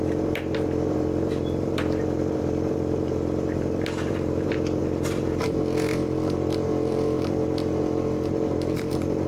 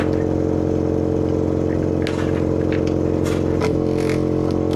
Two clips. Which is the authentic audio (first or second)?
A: second